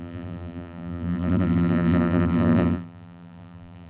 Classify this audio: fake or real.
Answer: fake